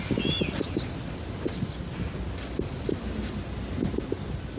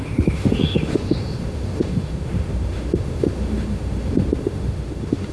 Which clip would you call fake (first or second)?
second